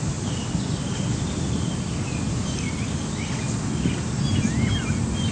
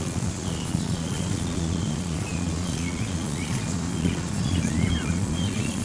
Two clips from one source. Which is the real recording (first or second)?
first